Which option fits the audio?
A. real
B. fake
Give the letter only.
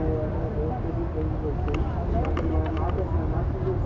A